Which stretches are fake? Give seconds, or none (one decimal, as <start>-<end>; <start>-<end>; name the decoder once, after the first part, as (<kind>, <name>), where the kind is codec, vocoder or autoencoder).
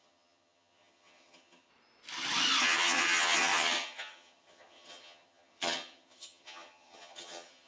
0.0-1.7 (vocoder, HiFi-GAN); 2.6-7.7